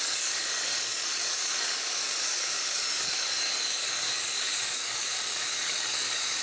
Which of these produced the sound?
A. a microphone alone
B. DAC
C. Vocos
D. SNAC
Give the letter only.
B